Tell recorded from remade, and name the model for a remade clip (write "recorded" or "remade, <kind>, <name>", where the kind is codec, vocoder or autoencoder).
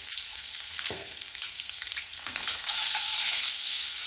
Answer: remade, codec, SNAC